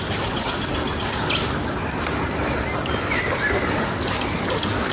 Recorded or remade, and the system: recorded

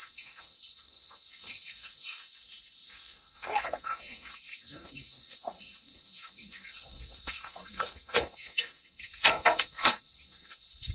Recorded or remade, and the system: remade, codec, SNAC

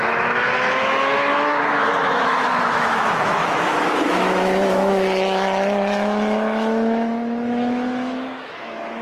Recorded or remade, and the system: remade, autoencoder, DAC-VAE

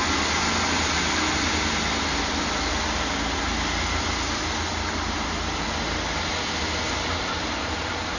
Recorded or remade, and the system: recorded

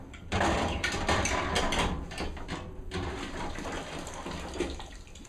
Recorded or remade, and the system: remade, vocoder, BigVGAN v2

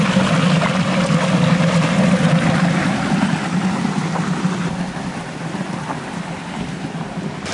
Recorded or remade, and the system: recorded